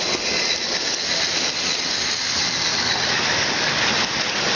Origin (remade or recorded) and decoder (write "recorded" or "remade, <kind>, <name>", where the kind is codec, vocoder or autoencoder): recorded